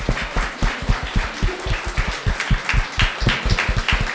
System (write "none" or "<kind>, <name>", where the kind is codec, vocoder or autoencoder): none